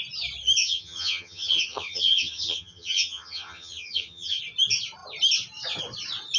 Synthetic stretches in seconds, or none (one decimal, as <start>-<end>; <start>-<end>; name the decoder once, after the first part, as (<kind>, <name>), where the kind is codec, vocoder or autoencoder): 0.6-4.4 (vocoder, HiFi-GAN)